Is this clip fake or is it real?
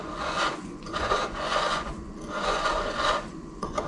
fake